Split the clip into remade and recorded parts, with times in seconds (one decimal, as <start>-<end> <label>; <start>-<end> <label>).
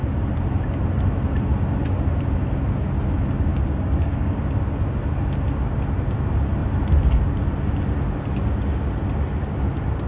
0.0-3.5 recorded; 3.5-4.4 remade; 4.4-10.1 recorded